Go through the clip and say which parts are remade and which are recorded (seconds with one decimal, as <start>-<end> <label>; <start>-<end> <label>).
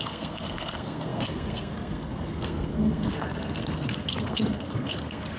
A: 0.0-5.4 remade